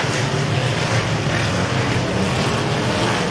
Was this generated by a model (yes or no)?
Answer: no